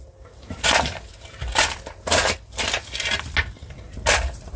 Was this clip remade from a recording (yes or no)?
no